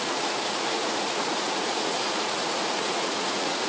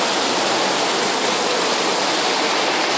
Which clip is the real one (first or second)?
second